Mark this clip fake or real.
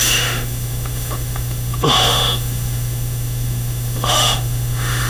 fake